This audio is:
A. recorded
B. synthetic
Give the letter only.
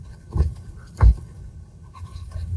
B